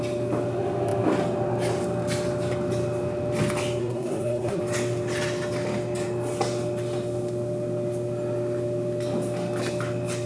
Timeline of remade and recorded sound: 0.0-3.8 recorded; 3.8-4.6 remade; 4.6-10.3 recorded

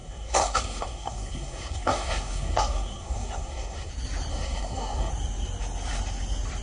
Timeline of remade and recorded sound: 0.0-3.9 remade; 3.9-4.3 recorded; 4.3-5.1 remade; 5.1-6.6 recorded

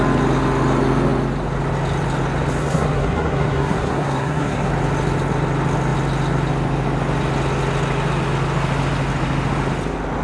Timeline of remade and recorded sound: 0.0-2.6 recorded; 2.6-4.7 remade; 4.7-10.2 recorded

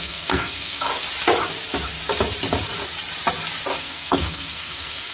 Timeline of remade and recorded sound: 0.0-0.9 remade; 0.9-3.8 recorded; 3.8-5.1 remade

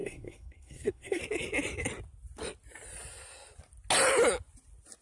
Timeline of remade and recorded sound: 0.0-1.2 remade; 1.2-5.0 recorded